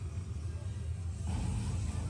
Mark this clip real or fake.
real